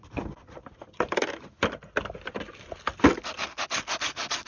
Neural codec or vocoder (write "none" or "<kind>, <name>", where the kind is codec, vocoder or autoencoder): none